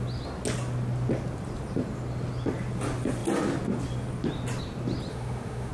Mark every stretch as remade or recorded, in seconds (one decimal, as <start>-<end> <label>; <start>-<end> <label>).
0.0-5.1 recorded; 5.1-5.7 remade